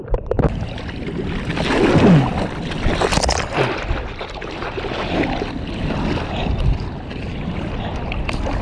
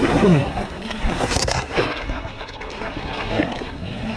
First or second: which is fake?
second